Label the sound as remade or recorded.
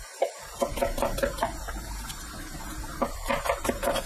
remade